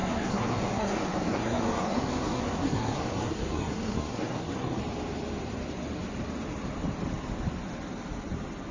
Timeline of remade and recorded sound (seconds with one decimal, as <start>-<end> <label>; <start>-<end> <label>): 0.0-4.8 remade; 4.8-8.7 recorded